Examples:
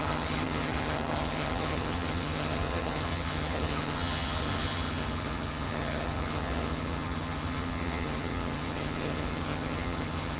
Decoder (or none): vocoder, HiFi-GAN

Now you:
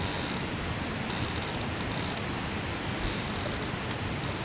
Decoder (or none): none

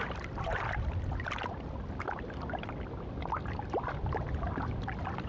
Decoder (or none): none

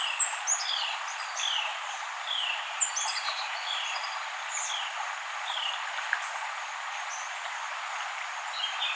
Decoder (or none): none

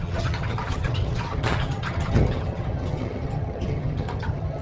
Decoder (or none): vocoder, HiFi-GAN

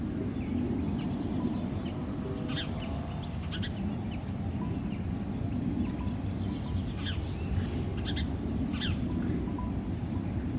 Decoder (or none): none